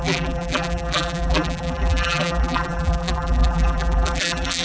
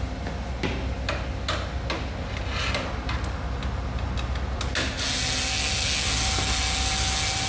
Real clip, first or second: second